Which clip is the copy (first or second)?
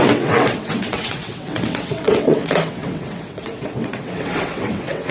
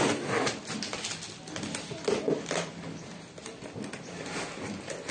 first